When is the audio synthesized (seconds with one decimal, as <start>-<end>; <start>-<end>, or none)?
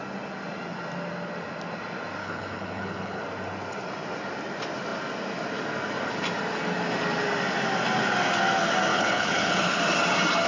2.2-3.2; 8.9-9.8